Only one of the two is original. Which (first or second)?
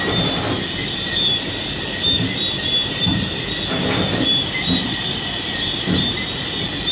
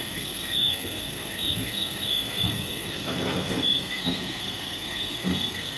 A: first